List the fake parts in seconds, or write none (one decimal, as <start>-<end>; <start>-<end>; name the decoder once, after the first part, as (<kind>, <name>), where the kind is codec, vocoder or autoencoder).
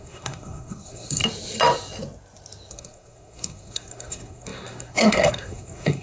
0.0-1.2 (codec, SNAC); 2.7-6.0